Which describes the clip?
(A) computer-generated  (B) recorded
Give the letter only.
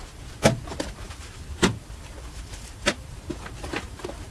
A